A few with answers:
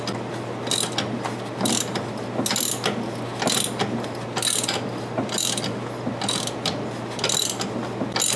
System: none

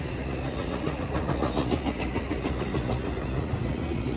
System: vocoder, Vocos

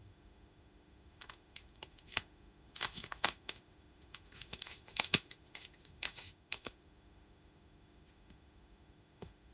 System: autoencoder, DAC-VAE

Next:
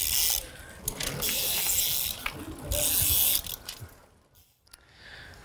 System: none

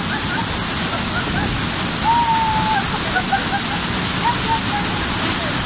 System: none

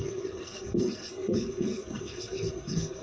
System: codec, SNAC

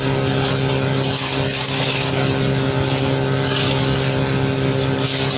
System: none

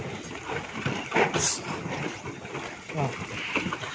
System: none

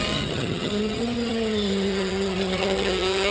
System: vocoder, HiFi-GAN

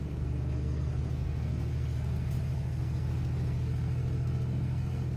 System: codec, SNAC